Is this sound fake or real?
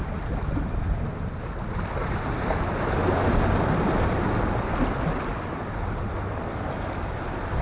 real